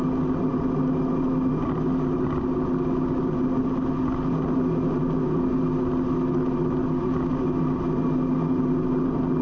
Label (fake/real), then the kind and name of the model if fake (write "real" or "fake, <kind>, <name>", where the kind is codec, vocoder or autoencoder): real